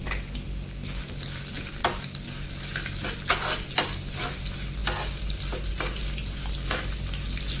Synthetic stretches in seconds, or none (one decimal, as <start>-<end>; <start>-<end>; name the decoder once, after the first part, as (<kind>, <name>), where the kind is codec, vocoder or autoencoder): none